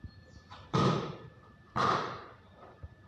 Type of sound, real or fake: fake